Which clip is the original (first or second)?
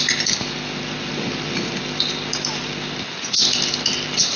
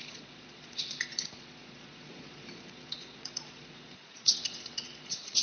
first